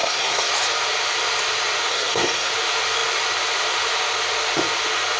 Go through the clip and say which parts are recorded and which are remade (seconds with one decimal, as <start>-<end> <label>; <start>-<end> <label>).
0.0-0.5 remade; 0.5-1.9 recorded; 1.9-2.5 remade; 2.5-5.2 recorded